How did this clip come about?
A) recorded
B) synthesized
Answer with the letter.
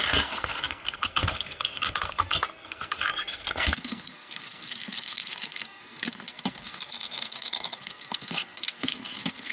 B